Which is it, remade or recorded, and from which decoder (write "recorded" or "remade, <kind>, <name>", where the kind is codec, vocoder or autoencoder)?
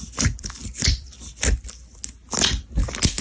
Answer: recorded